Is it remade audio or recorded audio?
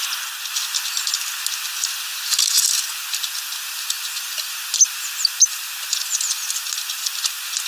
recorded